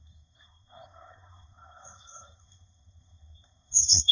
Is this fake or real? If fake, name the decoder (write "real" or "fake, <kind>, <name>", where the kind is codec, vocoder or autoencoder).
fake, codec, SNAC